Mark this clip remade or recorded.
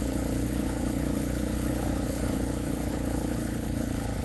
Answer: remade